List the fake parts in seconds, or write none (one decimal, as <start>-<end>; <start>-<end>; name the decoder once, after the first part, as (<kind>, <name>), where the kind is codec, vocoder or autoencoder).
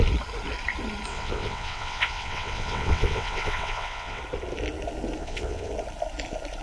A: 1.1-4.2 (vocoder, WaveNeXt); 5.2-5.7